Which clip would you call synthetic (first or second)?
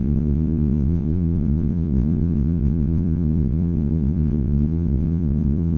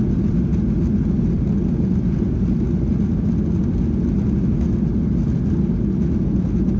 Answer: first